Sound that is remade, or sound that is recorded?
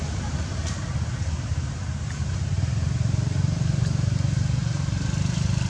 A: recorded